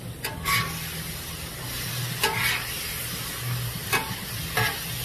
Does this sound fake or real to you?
real